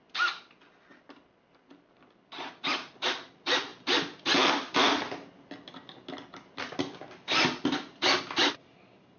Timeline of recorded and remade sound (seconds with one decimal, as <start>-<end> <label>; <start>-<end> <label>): 0.0-9.2 recorded